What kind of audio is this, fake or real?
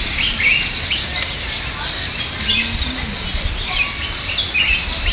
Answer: real